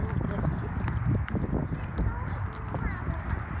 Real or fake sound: real